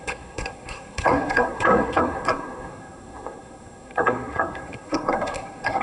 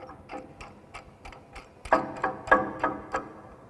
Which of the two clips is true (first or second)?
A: second